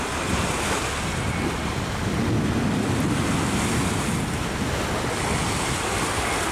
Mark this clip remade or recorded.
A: recorded